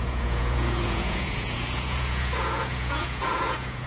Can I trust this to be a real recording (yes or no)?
no